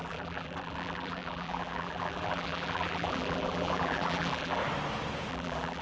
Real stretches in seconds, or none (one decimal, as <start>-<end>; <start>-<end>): 4.6-5.3